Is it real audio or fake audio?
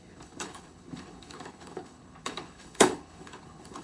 fake